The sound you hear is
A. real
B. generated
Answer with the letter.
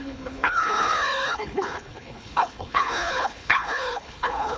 B